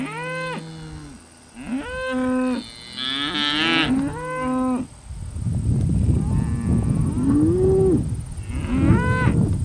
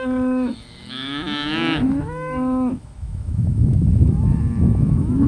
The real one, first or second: first